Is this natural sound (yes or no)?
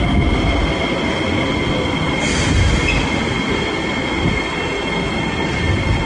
yes